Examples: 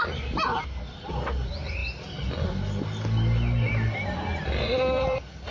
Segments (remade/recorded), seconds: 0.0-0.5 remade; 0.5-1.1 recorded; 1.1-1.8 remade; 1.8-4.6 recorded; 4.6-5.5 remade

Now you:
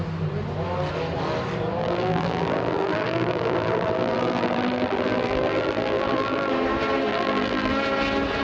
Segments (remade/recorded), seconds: 0.0-1.8 recorded; 1.8-6.5 remade; 6.5-7.1 recorded; 7.1-7.7 remade; 7.7-8.4 recorded